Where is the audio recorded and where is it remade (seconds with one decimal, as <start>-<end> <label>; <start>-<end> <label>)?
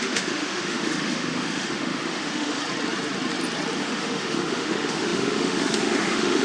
0.0-2.6 remade; 2.6-3.8 recorded; 3.8-6.4 remade